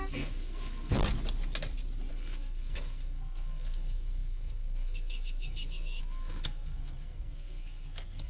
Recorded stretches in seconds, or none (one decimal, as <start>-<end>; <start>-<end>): 1.0-2.1